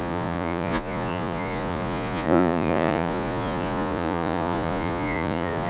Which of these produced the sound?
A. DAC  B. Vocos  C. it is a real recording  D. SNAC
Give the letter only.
B